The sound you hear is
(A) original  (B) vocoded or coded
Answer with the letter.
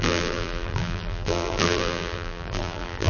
B